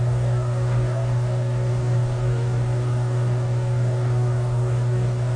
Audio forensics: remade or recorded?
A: remade